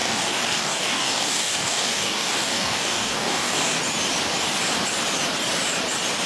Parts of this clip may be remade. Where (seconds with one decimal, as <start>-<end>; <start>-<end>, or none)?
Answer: 0.0-3.8